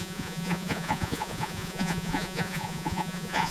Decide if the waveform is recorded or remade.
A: remade